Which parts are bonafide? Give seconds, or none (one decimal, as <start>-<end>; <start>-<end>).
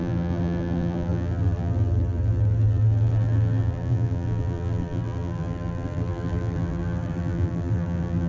none